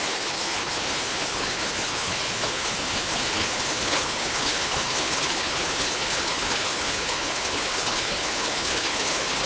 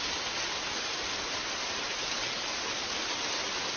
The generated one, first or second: first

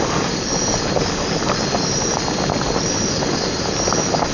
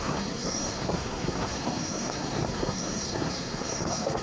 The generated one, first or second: second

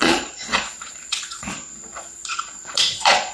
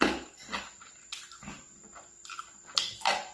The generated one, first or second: first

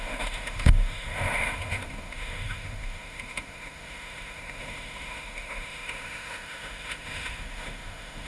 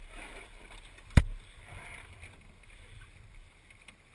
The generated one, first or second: first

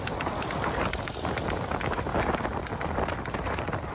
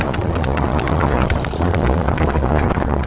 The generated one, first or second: second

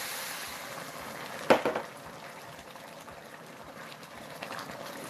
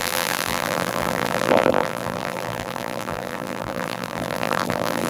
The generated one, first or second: second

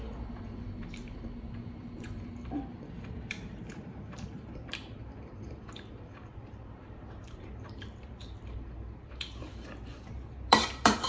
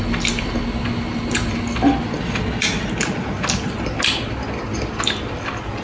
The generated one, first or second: first